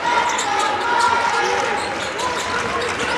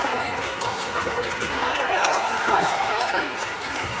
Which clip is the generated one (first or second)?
second